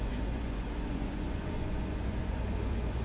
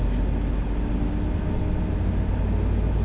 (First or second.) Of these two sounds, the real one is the second